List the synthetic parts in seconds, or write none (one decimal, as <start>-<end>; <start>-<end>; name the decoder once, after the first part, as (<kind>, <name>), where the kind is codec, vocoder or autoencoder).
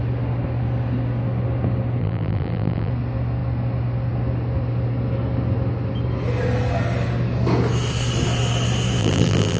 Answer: 2.0-2.9 (vocoder, BigVGAN v2); 9.0-9.6